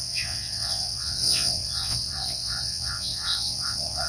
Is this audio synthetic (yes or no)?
yes